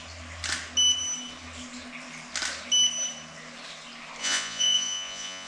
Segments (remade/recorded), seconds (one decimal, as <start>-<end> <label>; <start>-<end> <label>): 0.0-4.2 recorded; 4.2-5.5 remade